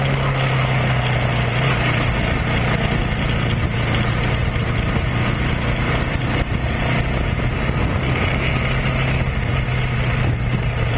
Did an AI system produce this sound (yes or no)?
no